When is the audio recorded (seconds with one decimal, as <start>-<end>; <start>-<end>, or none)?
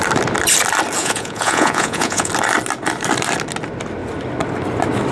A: 0.0-1.0; 2.3-5.1